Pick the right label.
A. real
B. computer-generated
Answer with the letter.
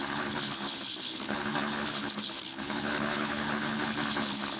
B